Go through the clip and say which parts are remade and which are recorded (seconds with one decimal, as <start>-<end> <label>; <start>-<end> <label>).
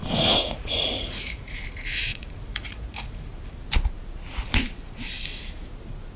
0.0-3.3 remade; 3.3-6.2 recorded